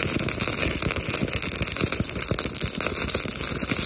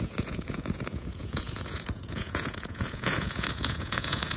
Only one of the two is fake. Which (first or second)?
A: second